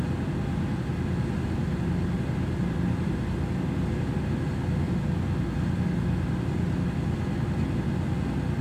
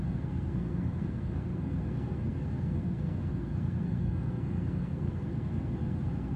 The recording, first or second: first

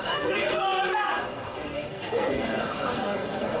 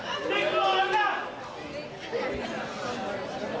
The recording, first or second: second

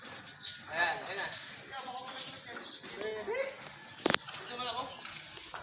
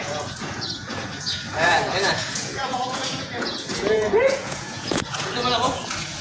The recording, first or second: first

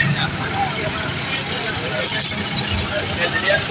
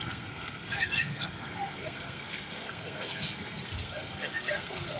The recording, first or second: first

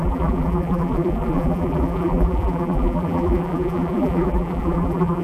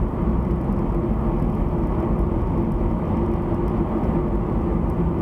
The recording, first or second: second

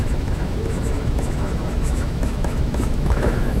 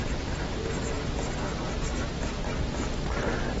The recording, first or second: second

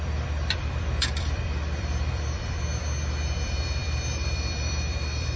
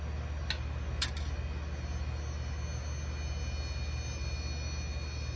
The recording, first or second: second